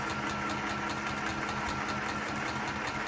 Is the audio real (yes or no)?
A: yes